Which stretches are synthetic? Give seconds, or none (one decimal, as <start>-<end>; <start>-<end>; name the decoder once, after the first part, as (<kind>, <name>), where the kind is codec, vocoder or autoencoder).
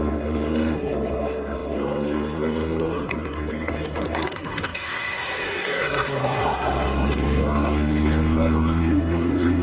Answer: 0.0-9.6 (codec, SNAC)